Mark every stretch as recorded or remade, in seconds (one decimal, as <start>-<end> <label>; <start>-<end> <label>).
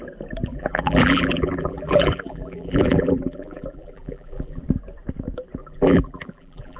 0.0-0.5 recorded; 0.5-4.6 remade; 4.6-5.6 recorded; 5.6-6.8 remade